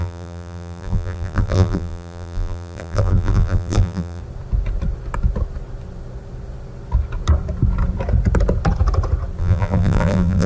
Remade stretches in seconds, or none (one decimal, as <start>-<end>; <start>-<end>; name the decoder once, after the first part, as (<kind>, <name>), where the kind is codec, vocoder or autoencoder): 0.0-4.2 (vocoder, BigVGAN v2); 9.4-10.5